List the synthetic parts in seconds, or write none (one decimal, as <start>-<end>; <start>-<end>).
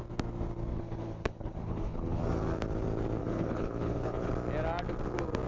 0.7-2.2; 3.2-4.3